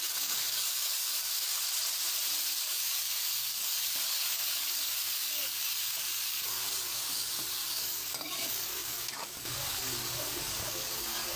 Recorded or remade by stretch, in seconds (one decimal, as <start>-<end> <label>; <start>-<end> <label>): 0.0-1.5 remade; 1.5-2.6 recorded; 2.6-11.4 remade